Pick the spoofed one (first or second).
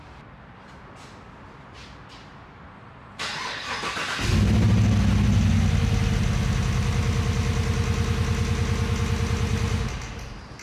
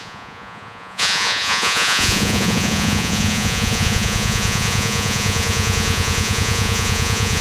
second